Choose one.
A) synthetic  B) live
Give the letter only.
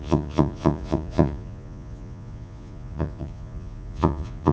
A